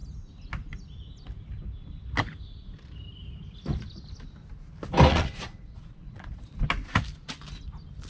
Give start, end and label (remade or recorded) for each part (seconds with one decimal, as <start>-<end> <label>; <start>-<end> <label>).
0.0-5.1 recorded; 5.1-6.5 remade; 6.5-8.1 recorded